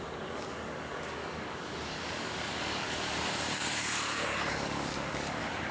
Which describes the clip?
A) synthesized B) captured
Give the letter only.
A